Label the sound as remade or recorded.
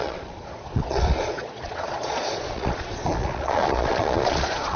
remade